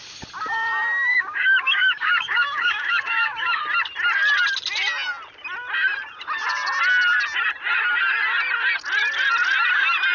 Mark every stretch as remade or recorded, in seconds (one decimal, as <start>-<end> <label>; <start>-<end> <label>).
0.0-1.1 recorded; 1.1-3.6 remade; 3.6-10.1 recorded